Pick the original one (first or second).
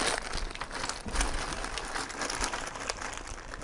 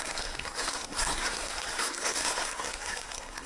first